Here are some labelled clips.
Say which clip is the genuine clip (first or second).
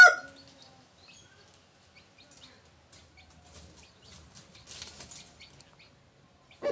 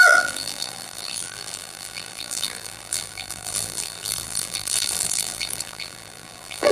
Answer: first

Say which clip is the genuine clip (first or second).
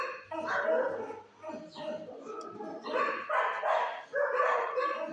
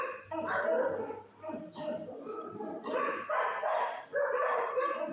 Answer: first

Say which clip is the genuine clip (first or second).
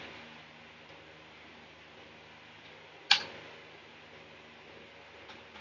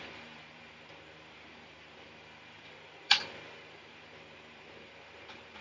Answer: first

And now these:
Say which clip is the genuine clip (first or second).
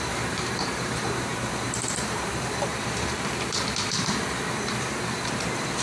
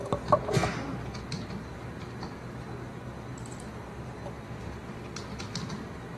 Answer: second